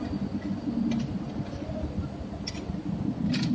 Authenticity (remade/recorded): recorded